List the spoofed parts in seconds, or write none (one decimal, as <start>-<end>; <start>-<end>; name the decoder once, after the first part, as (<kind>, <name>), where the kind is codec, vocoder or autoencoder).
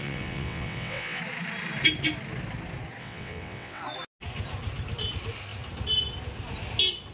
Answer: 0.0-1.2 (vocoder, WaveNeXt); 3.0-3.8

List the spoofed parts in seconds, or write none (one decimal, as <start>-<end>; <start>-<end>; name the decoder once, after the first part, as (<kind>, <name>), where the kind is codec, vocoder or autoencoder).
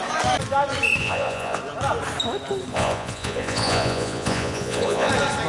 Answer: 1.0-1.6 (vocoder, Vocos); 2.7-5.1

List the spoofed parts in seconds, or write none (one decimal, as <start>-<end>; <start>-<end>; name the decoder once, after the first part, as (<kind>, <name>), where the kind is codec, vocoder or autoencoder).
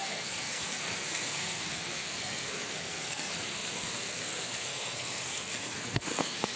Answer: 0.0-6.6 (codec, SNAC)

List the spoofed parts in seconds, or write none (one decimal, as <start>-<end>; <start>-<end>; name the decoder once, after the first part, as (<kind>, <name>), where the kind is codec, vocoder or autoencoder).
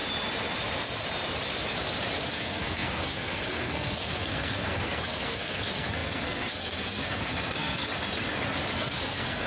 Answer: 2.3-7.9 (codec, SNAC); 8.7-9.5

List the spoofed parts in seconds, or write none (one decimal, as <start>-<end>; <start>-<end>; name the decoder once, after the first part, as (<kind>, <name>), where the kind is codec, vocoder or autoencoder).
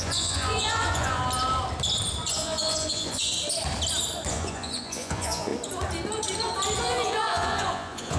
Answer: 0.0-1.2 (vocoder, Vocos); 2.3-3.3; 4.3-5.5; 6.8-8.2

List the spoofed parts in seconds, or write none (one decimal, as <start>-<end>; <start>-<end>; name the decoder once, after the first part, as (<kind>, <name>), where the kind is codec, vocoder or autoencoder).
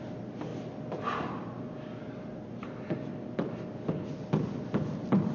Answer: none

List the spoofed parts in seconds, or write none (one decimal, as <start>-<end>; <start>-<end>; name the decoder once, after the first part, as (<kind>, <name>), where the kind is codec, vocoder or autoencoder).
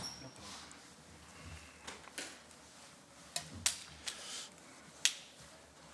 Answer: none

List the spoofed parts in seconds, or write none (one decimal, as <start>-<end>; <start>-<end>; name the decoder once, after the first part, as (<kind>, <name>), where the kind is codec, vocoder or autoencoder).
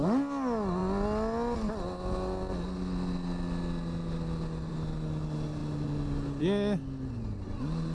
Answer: none